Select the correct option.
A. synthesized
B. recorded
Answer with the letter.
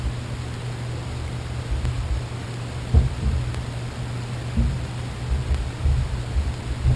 B